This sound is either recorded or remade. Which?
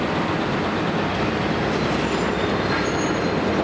recorded